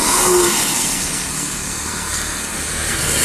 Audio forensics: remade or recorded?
remade